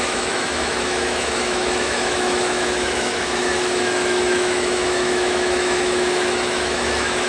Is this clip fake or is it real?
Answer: fake